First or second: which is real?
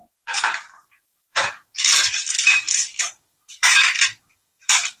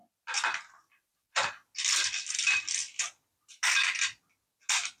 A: second